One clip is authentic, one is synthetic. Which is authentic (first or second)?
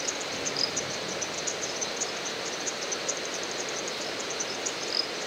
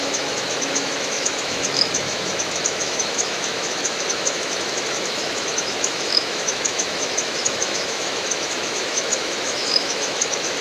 first